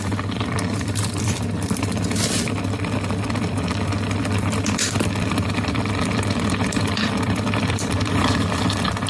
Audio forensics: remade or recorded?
remade